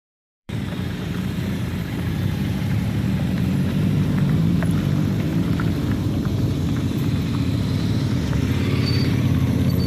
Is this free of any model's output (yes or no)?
no